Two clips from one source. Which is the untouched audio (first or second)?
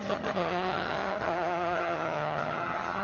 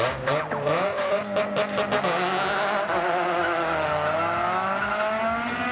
second